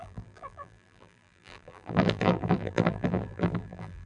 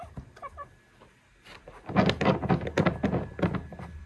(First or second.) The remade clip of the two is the first